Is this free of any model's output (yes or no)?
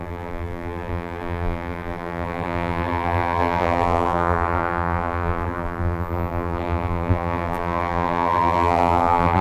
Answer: no